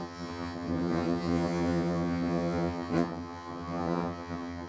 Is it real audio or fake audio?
fake